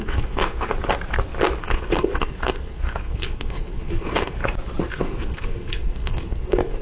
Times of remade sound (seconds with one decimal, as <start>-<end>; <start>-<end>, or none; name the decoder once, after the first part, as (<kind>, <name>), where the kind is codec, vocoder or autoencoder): 0.0-0.7 (codec, SNAC); 1.6-4.4; 4.9-6.8